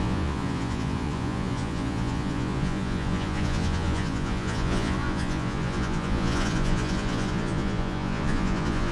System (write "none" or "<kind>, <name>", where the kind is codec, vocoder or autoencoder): vocoder, Vocos